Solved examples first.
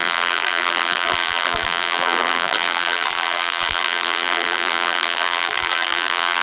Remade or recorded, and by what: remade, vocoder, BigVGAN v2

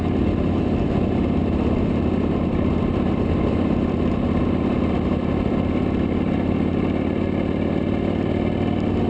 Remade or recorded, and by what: recorded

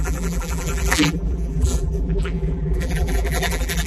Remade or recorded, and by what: remade, vocoder, BigVGAN v2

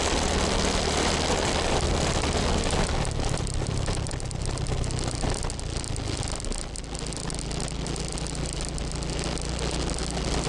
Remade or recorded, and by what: recorded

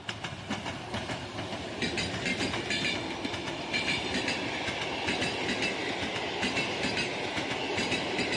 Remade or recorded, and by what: recorded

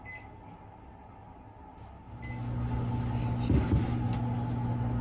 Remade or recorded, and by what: recorded